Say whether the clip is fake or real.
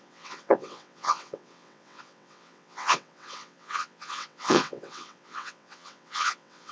fake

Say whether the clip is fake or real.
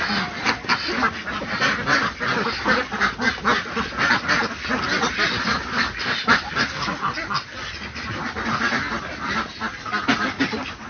real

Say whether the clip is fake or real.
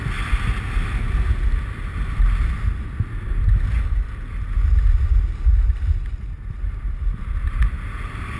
real